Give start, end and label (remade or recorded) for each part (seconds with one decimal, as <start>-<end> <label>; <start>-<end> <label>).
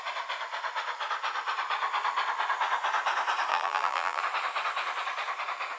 0.0-3.5 recorded; 3.5-4.2 remade; 4.2-5.8 recorded